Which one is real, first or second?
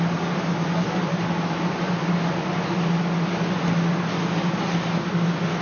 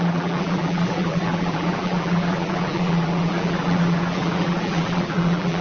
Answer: first